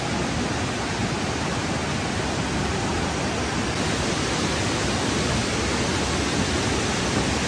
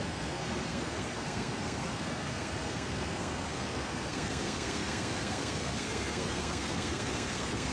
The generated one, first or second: second